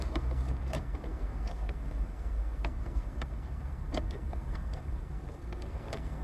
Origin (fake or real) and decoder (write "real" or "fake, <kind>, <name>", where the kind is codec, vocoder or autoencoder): fake, codec, SNAC